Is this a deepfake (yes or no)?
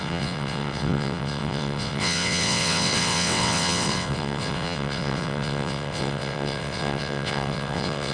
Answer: yes